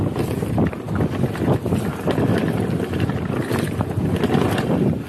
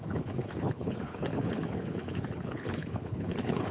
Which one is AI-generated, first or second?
second